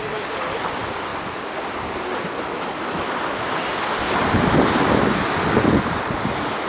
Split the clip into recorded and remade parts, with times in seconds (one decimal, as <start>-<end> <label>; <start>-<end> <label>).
0.0-6.7 recorded